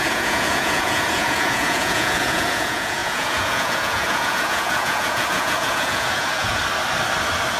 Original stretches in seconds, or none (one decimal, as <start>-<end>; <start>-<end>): 6.6-7.6